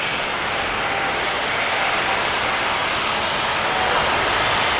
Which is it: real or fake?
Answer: real